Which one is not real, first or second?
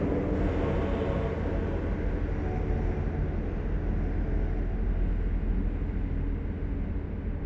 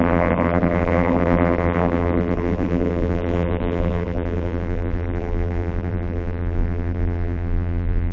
second